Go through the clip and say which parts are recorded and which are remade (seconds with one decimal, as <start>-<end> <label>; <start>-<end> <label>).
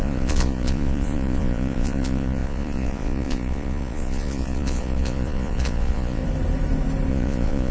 0.0-6.2 remade; 6.2-7.1 recorded; 7.1-7.7 remade